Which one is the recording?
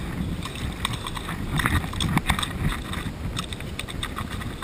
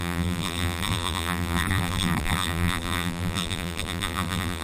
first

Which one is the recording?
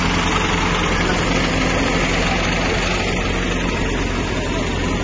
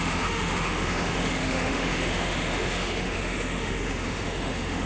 first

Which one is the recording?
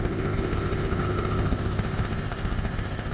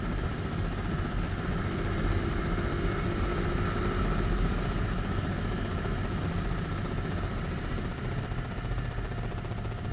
second